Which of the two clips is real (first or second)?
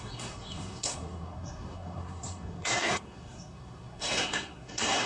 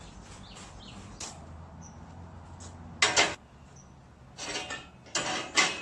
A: second